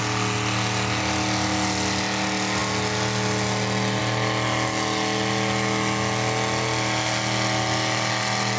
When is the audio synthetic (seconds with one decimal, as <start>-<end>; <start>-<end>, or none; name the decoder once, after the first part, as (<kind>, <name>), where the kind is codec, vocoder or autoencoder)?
none